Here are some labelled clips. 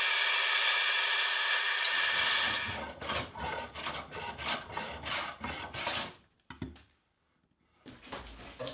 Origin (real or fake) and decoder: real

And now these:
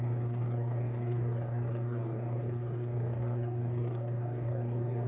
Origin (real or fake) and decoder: fake, codec, DAC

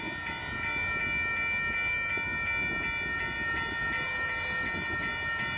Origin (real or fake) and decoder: real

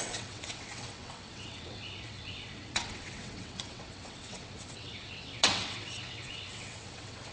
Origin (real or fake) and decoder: fake, vocoder, WaveNeXt